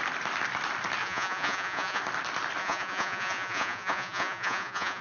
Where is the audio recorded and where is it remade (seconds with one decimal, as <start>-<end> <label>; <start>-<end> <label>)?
0.0-1.0 recorded; 1.0-2.0 remade; 2.0-2.6 recorded; 2.6-5.0 remade